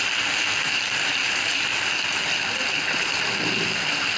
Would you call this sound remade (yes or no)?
no